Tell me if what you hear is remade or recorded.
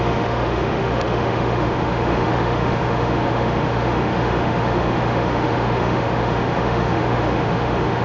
remade